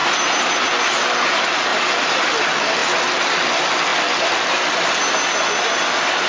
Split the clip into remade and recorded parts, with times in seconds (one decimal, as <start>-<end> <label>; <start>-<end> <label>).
0.0-0.5 remade; 0.5-1.7 recorded; 1.7-2.3 remade; 2.3-6.3 recorded